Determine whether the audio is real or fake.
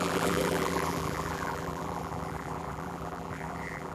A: fake